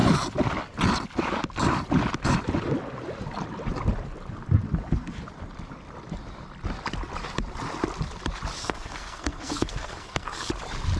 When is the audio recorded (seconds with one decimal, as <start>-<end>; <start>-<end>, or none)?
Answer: 0.0-8.6; 10.5-11.0